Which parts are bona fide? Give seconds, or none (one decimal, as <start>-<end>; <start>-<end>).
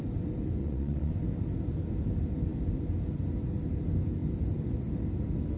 0.0-0.6; 1.1-5.6